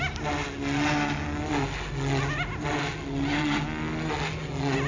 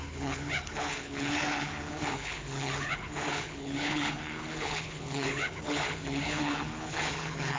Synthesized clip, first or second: second